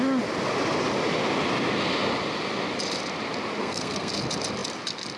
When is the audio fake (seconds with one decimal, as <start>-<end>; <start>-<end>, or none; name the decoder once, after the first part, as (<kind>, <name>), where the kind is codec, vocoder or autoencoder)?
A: 3.6-4.1 (codec, SNAC)